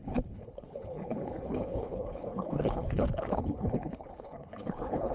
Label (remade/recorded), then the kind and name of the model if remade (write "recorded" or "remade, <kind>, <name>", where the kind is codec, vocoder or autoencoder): remade, codec, HILCodec